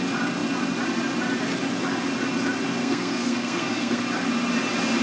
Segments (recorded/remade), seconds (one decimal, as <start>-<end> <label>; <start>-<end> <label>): 0.0-2.8 recorded; 2.8-4.0 remade; 4.0-5.0 recorded